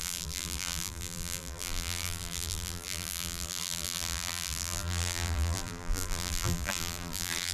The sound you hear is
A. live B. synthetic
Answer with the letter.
B